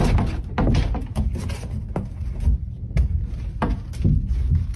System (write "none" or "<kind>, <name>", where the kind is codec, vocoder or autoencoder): none